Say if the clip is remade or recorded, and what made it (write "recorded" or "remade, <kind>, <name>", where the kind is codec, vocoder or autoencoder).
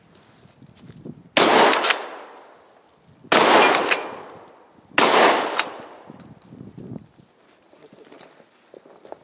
recorded